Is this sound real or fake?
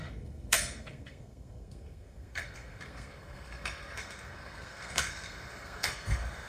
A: fake